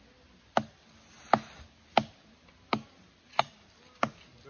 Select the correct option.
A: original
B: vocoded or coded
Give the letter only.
A